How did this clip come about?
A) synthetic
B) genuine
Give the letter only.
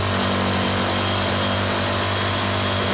B